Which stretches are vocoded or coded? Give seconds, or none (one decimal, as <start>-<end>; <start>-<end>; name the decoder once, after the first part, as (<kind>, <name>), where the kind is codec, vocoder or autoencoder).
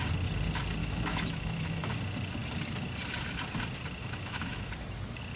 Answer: 0.8-1.9 (autoencoder, DAC-VAE); 4.0-4.7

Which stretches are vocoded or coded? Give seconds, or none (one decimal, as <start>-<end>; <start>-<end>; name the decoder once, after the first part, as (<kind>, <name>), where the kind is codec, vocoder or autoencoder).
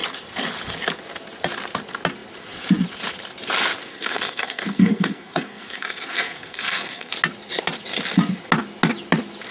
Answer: 3.9-7.1 (codec, SNAC)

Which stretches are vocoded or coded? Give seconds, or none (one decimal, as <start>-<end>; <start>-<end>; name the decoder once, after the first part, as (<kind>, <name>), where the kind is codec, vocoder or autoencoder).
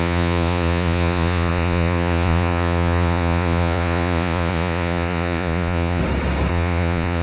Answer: 0.0-6.0 (vocoder, Vocos); 6.5-7.2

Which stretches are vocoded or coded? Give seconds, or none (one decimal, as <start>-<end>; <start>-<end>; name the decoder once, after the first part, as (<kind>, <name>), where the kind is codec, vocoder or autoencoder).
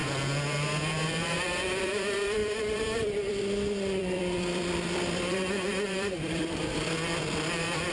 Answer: 0.9-7.9 (vocoder, BigVGAN v2)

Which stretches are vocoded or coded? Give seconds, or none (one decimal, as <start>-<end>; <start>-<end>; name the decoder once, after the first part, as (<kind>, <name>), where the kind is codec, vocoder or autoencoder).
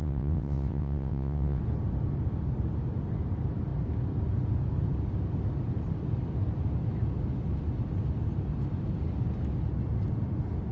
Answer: 0.0-1.6 (vocoder, WaveNeXt)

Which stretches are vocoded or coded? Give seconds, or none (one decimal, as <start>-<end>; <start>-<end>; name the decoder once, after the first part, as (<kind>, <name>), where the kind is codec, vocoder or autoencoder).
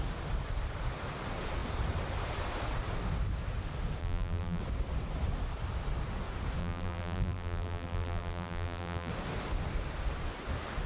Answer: 4.0-4.6 (vocoder, BigVGAN v2); 6.6-9.1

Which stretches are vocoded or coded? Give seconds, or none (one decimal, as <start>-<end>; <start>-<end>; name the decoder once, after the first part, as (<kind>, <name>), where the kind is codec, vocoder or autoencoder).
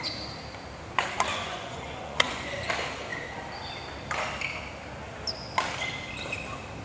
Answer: 1.3-2.7 (vocoder, Vocos)